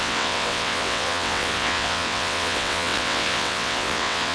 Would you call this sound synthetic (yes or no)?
yes